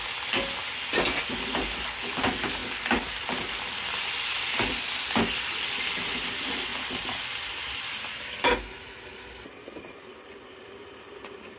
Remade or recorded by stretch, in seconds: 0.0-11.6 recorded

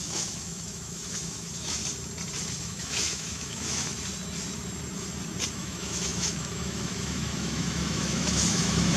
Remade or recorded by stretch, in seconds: 0.0-1.8 remade; 1.8-2.6 recorded; 2.6-3.9 remade; 3.9-5.5 recorded; 5.5-9.0 remade

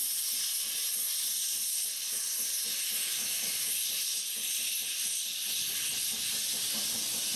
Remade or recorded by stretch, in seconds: 0.0-3.0 recorded; 3.0-3.7 remade; 3.7-7.4 recorded

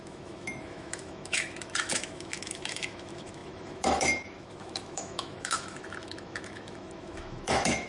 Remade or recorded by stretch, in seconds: 0.0-7.9 remade